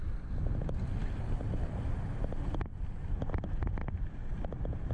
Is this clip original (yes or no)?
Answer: yes